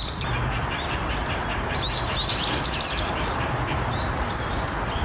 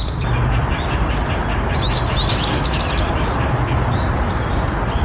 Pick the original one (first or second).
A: second